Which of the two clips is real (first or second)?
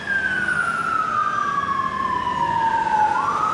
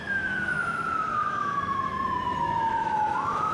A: first